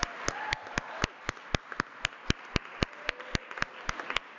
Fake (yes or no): no